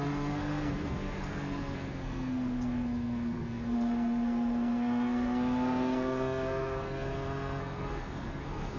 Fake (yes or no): yes